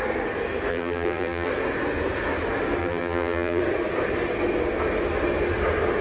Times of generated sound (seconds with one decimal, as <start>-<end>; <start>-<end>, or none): 0.7-1.5; 2.8-3.6